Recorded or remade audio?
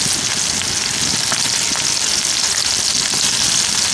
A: recorded